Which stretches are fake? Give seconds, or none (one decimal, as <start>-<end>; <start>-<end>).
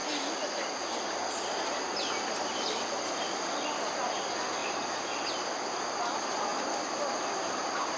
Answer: 4.6-5.6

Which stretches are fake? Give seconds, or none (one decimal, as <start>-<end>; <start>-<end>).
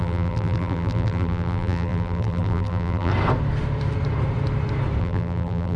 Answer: 0.0-3.1; 5.0-5.8